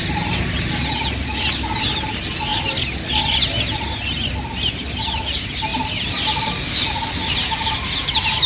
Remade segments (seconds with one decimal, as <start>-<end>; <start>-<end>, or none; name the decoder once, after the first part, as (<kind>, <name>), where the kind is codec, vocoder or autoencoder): 5.7-6.8 (vocoder, BigVGAN v2)